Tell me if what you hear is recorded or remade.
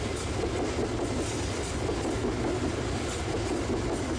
recorded